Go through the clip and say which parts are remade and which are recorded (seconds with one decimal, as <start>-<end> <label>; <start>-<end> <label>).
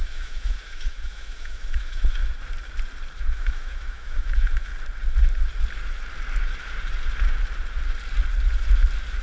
0.0-2.2 remade; 2.2-3.2 recorded; 3.2-4.7 remade; 4.7-9.2 recorded